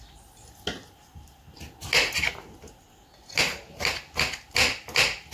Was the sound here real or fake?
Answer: real